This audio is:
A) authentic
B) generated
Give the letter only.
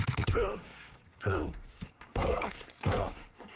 B